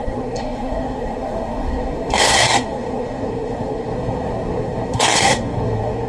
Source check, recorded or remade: remade